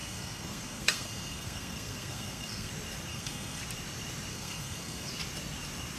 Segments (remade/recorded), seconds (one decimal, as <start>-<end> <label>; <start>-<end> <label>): 0.0-2.7 remade; 2.7-3.1 recorded; 3.1-3.6 remade; 3.6-4.3 recorded; 4.3-5.1 remade; 5.1-6.0 recorded